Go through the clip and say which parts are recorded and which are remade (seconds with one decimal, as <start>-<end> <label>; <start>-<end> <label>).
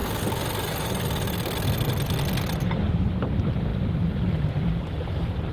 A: 0.0-5.5 recorded